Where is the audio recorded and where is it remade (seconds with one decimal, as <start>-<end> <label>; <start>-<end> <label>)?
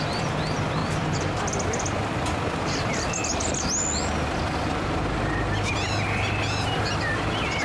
0.0-0.8 recorded; 0.8-3.6 remade; 3.6-7.6 recorded